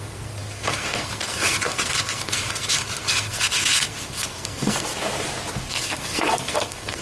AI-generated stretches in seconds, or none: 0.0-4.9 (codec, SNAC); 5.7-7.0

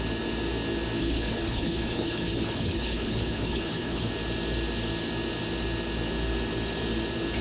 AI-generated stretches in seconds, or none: 1.0-4.1 (codec, HILCodec)

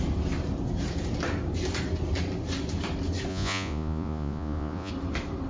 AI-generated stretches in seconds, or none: 3.3-4.9 (vocoder, Vocos)

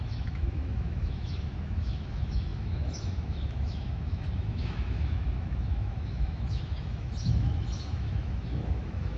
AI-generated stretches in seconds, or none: 0.0-9.2 (autoencoder, DAC-VAE)

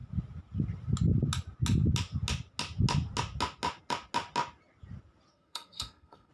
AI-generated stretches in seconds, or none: 5.3-6.3 (codec, SNAC)

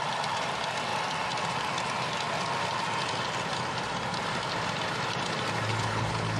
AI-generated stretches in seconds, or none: 5.7-6.4 (codec, HILCodec)

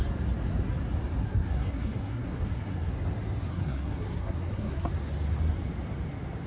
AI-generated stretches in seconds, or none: 1.2-2.9 (codec, SNAC); 3.5-4.9

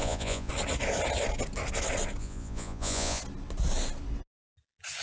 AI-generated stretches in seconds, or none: 0.0-0.5 (vocoder, Vocos); 2.2-3.2